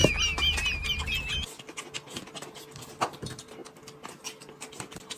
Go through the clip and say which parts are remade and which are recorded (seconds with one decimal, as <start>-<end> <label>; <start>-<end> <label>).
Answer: 0.0-5.2 recorded